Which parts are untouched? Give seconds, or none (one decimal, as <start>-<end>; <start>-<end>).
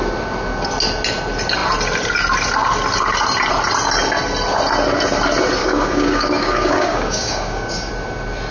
0.0-5.6; 7.9-8.5